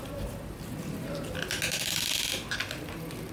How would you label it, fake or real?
real